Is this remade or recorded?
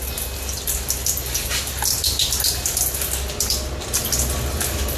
recorded